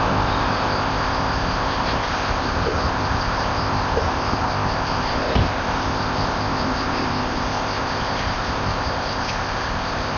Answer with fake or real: fake